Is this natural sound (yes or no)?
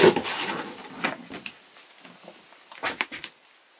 yes